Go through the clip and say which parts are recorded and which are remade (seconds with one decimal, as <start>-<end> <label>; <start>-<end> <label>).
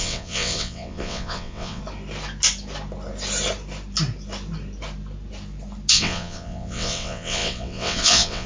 0.0-1.8 remade; 1.8-5.9 recorded; 5.9-8.5 remade